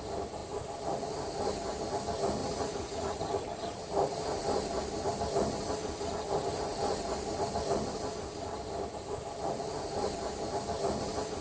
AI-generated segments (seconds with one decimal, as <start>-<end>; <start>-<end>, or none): 2.4-3.2